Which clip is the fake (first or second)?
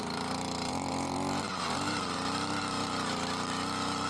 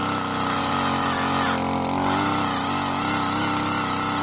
first